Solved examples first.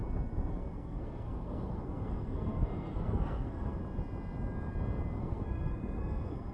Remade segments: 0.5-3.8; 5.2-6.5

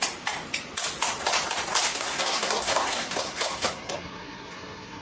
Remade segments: 1.9-5.0

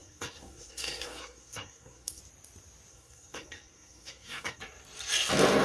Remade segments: 0.0-2.2; 2.9-4.6

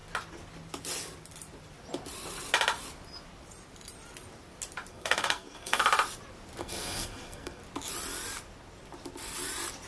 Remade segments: 4.9-5.8; 6.6-7.6

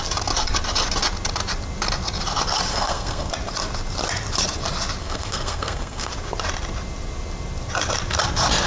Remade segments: 2.7-3.3; 5.0-6.1

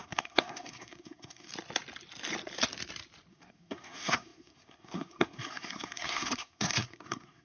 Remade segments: 0.0-1.5; 3.3-7.4

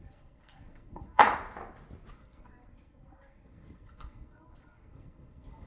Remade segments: 0.0-1.2; 2.1-5.7

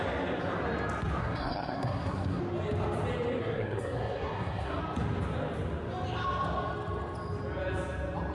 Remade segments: 1.2-2.4; 3.4-4.8